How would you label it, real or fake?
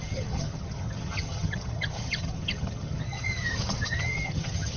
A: fake